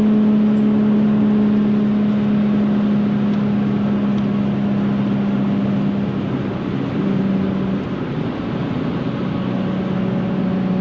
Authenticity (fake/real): real